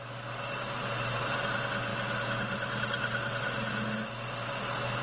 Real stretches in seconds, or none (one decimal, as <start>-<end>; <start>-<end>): 0.0-5.0